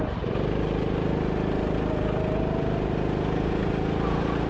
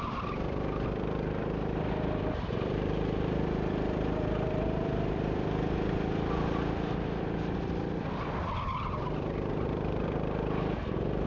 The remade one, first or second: second